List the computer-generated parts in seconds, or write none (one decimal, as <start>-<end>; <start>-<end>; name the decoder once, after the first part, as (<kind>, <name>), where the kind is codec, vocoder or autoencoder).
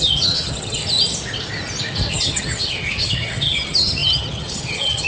0.0-0.8 (vocoder, HiFi-GAN); 2.1-5.1